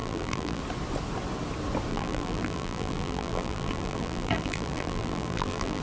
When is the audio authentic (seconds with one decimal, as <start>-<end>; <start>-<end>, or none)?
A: 0.6-1.9